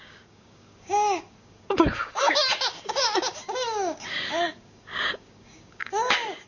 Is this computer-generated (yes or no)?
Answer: yes